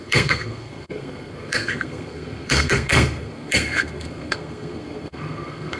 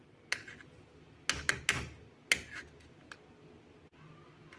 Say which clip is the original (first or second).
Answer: second